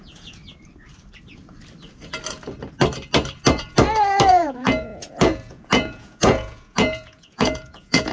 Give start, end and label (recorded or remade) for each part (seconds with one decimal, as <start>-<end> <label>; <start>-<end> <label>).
0.0-0.4 remade; 0.4-4.3 recorded; 4.3-8.1 remade